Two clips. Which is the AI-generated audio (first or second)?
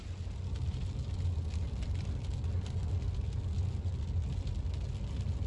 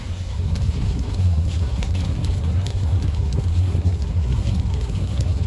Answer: second